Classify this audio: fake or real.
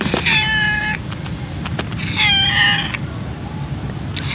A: real